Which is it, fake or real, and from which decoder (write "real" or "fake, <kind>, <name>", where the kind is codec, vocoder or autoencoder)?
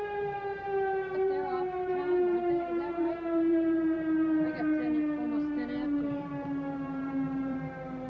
fake, vocoder, BigVGAN v2